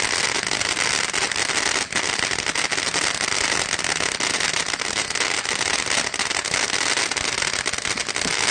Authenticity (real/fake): real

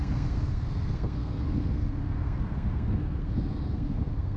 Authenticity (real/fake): fake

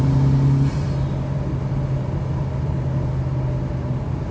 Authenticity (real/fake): real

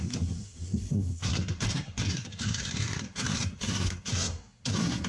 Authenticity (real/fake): fake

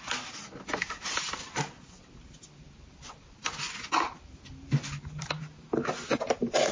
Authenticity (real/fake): real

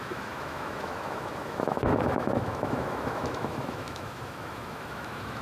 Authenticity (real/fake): fake